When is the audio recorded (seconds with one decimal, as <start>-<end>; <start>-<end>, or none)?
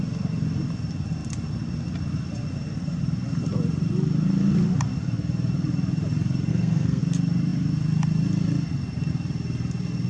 0.0-6.5; 7.0-10.1